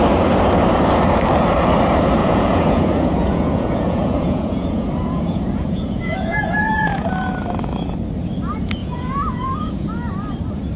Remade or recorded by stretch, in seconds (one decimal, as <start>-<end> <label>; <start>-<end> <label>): 0.0-2.2 recorded; 2.2-7.1 remade; 7.1-8.8 recorded; 8.8-9.9 remade; 9.9-10.8 recorded